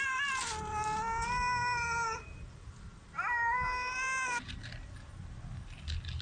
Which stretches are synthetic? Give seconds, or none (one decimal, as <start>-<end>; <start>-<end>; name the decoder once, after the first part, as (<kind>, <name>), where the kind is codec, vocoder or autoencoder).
none